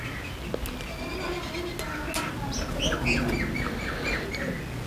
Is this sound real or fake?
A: real